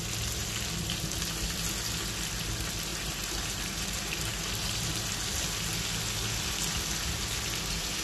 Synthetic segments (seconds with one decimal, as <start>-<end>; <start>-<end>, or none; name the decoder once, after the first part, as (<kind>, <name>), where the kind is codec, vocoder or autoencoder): 2.9-5.1 (vocoder, BigVGAN v2)